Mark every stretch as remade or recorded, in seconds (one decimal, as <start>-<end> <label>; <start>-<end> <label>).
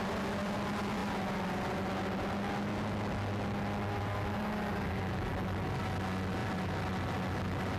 0.0-7.8 recorded